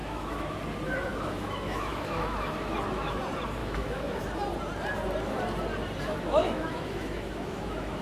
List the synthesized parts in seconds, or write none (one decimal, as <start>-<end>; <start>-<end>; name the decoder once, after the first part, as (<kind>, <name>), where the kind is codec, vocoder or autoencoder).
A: 0.0-0.6 (autoencoder, DAC-VAE); 1.1-3.2; 3.6-4.2; 6.4-8.0